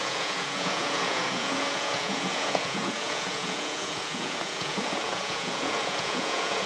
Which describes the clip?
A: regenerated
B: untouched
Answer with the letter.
A